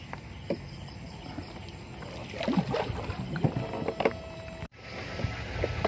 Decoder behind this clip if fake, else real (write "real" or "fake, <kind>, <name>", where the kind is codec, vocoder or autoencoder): real